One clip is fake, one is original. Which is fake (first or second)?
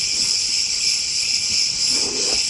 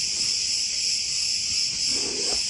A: first